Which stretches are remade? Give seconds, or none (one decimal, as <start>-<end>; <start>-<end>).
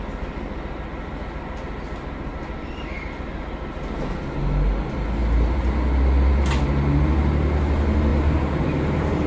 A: 2.3-2.8; 8.1-9.3